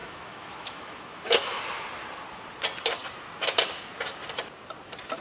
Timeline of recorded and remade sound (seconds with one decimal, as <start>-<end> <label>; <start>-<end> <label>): 0.0-1.6 remade; 1.6-5.2 recorded